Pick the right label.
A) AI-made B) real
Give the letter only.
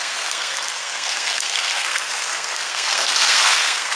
A